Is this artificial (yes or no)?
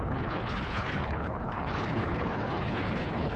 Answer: yes